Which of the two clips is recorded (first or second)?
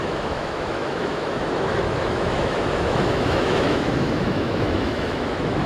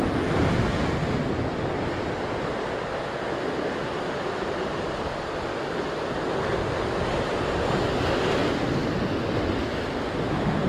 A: second